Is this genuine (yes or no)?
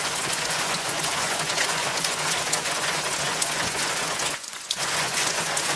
no